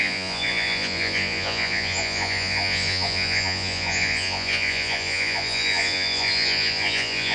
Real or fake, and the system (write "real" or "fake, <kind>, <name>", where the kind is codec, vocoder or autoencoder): fake, vocoder, Vocos